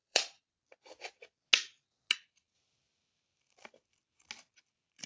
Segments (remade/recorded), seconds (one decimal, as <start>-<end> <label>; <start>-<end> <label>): 0.0-0.6 remade; 0.6-5.1 recorded